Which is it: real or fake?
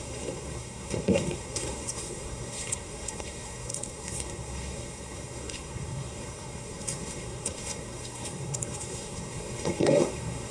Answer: fake